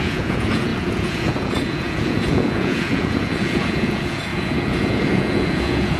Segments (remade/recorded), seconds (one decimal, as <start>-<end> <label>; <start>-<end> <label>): 0.0-6.0 remade